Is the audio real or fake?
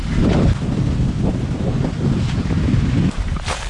real